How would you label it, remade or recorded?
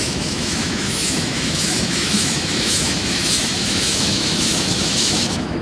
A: remade